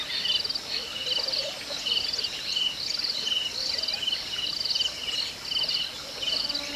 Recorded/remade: recorded